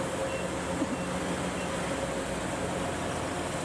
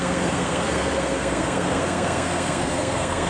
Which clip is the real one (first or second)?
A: first